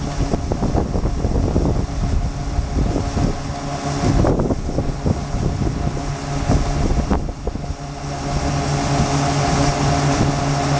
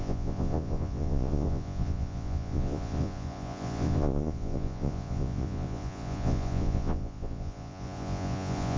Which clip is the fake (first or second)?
second